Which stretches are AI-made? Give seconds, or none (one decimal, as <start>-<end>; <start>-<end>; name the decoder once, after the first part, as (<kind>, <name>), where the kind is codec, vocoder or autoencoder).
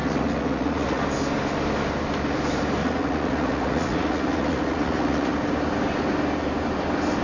0.0-1.0 (vocoder, Vocos); 2.8-5.3